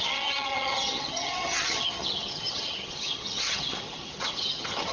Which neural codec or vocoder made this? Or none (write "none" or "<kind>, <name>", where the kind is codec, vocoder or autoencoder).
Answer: vocoder, HiFi-GAN